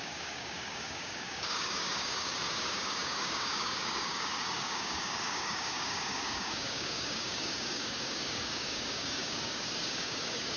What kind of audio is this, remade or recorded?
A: remade